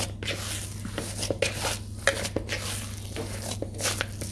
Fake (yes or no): no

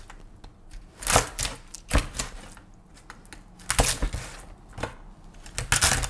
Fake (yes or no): no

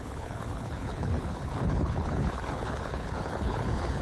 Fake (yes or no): yes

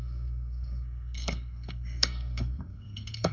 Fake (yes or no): yes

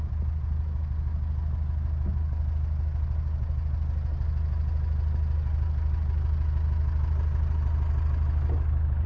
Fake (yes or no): no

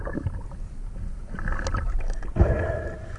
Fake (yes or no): no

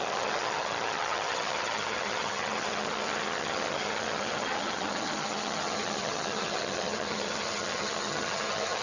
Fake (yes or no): yes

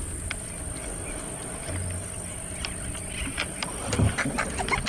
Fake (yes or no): no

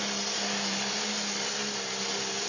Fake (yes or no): no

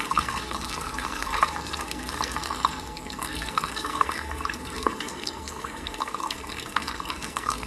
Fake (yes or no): yes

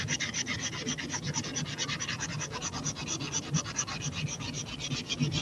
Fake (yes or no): no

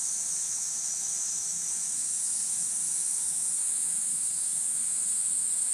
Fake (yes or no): yes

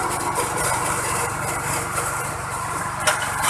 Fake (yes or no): yes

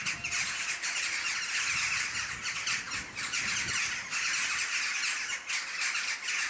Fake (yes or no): no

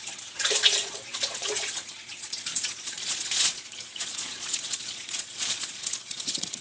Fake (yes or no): yes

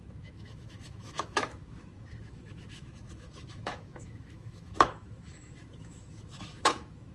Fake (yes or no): yes